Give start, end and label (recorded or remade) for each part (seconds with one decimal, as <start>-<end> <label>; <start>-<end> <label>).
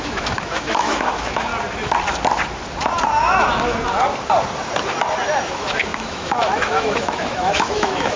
0.0-1.5 remade; 1.5-5.5 recorded; 5.5-8.2 remade